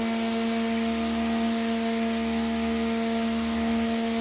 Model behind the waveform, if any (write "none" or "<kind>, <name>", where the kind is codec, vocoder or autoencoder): none